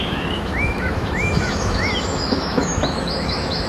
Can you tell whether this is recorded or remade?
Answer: remade